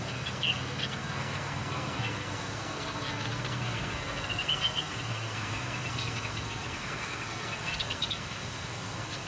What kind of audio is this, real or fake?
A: fake